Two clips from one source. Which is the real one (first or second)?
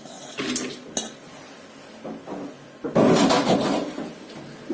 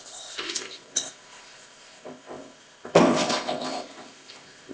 first